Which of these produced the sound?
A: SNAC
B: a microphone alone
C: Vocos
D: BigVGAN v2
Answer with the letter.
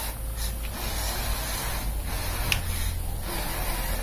B